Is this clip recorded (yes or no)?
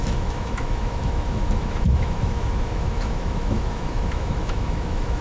no